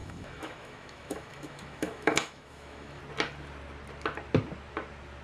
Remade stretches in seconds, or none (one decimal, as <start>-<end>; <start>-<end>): 0.0-3.0